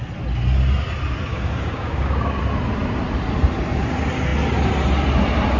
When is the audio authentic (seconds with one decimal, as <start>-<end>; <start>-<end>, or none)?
0.0-1.3; 2.4-5.6